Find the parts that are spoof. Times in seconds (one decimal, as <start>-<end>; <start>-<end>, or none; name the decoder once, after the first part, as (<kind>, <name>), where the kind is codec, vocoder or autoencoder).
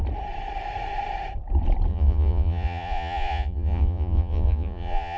1.9-5.2 (vocoder, Vocos)